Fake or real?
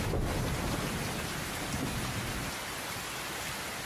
real